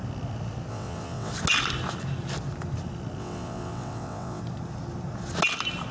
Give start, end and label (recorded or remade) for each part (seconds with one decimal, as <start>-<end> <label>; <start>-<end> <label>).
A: 0.0-0.7 recorded; 0.7-1.3 remade; 1.3-3.2 recorded; 3.2-4.4 remade; 4.4-5.9 recorded